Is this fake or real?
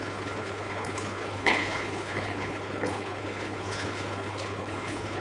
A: fake